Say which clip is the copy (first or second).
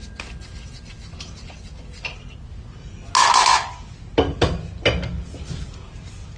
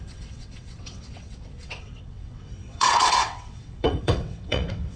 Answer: second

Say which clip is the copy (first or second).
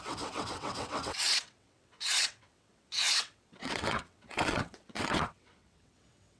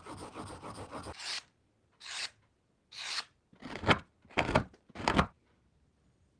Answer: first